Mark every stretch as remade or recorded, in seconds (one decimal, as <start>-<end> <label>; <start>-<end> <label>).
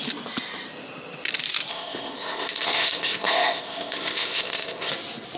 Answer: 0.0-1.7 recorded; 1.7-4.9 remade; 4.9-5.4 recorded